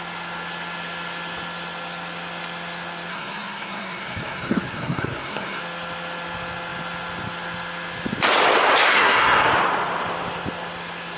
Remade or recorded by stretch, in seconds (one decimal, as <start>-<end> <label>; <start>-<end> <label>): 0.0-3.1 recorded; 3.1-5.6 remade; 5.6-8.9 recorded; 8.9-9.5 remade; 9.5-11.2 recorded